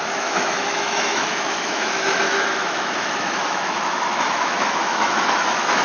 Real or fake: fake